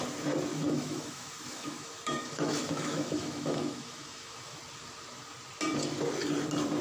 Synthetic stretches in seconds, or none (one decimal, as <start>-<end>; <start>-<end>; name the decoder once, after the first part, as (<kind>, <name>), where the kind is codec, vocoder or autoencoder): 0.5-4.6 (autoencoder, DAC-VAE)